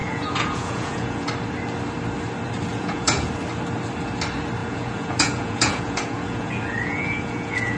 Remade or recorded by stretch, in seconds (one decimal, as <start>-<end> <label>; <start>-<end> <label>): 0.0-1.3 remade; 1.3-2.7 recorded; 2.7-3.3 remade; 3.3-4.6 recorded; 4.6-7.8 remade